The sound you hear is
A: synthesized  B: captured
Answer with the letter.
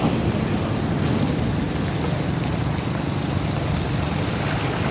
B